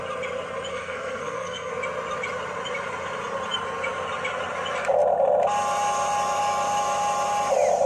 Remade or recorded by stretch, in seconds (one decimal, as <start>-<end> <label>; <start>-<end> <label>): 0.0-0.7 recorded; 0.7-1.7 remade; 1.7-7.9 recorded